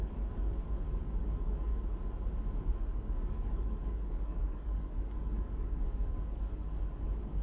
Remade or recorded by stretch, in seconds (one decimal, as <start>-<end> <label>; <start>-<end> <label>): 0.0-1.7 remade; 1.7-2.6 recorded; 2.6-7.4 remade